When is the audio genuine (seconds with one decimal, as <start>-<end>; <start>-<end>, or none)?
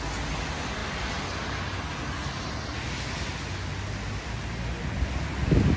0.0-5.8